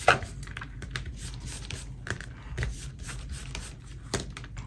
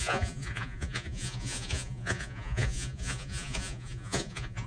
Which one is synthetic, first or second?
second